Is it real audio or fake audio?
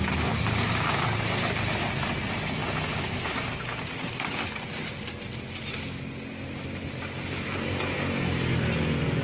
real